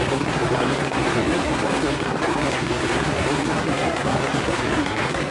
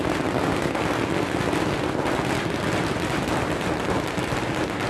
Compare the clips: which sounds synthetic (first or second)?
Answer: first